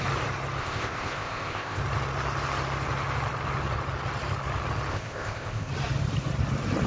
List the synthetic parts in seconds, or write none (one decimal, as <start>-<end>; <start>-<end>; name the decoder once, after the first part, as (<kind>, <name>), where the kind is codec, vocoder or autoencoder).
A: 0.6-1.8 (codec, ZipCodec); 4.9-5.7